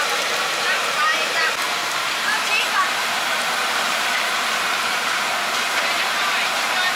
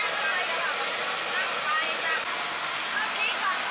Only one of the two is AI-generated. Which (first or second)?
first